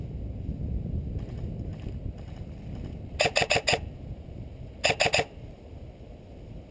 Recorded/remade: recorded